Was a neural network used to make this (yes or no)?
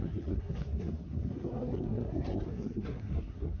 yes